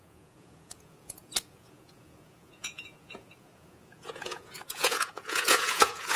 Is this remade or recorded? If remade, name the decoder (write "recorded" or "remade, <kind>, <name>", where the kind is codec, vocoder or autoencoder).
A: remade, vocoder, Vocos